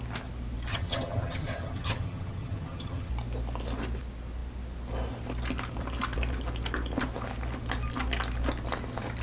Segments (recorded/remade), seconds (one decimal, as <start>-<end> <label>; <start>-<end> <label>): 0.0-0.7 recorded; 0.7-3.1 remade; 3.1-9.2 recorded